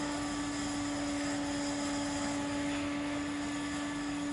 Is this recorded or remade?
recorded